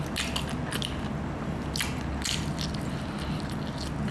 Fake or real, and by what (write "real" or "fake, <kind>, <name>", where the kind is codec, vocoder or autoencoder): real